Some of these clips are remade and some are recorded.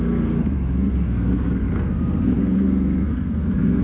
remade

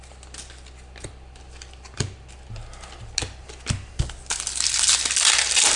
recorded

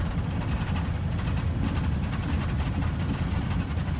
recorded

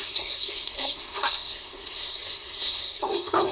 remade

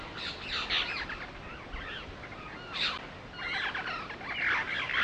recorded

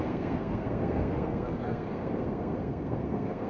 remade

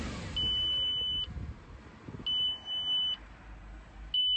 recorded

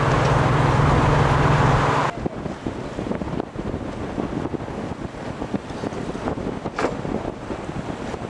recorded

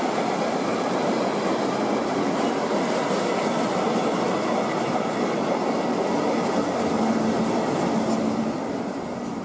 recorded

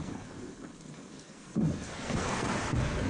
remade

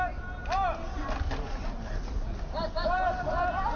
recorded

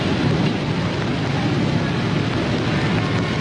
recorded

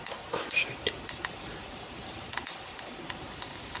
recorded